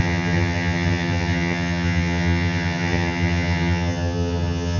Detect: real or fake fake